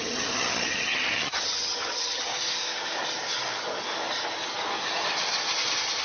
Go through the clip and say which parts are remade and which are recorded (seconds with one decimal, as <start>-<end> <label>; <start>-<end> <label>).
0.0-2.3 remade; 2.3-6.0 recorded

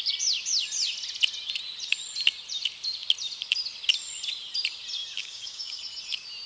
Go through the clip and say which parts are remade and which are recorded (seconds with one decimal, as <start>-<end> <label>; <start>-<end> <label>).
0.0-5.2 recorded; 5.2-5.8 remade; 5.8-6.5 recorded

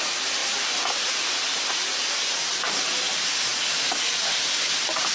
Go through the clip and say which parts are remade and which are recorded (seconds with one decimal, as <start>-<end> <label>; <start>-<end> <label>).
0.0-0.4 recorded; 0.4-1.7 remade; 1.7-5.1 recorded

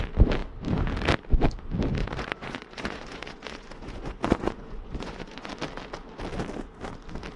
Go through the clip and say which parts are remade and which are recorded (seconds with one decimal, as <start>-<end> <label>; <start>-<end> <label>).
0.0-2.0 recorded; 2.0-5.5 remade; 5.5-7.4 recorded

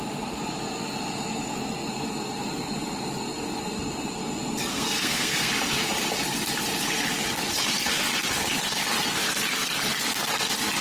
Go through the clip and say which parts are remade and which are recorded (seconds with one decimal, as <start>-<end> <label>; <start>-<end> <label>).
0.0-4.7 recorded; 4.7-5.5 remade; 5.5-10.8 recorded

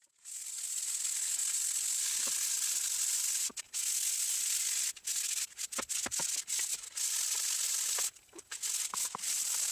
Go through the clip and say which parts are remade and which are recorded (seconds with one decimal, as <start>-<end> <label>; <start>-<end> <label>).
0.0-9.7 recorded

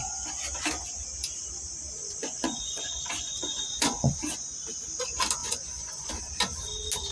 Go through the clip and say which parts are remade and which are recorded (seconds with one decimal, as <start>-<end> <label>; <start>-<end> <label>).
0.0-2.0 recorded; 2.0-4.1 remade; 4.1-5.4 recorded; 5.4-6.1 remade; 6.1-7.1 recorded